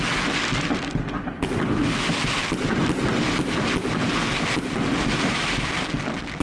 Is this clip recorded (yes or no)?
yes